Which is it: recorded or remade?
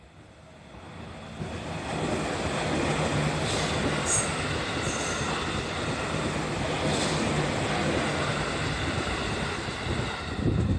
recorded